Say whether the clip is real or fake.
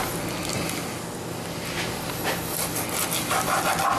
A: real